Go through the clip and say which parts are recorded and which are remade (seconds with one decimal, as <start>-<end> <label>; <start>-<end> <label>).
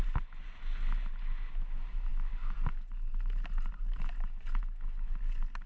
0.0-5.7 recorded